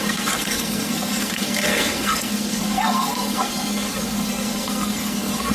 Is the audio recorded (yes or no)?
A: no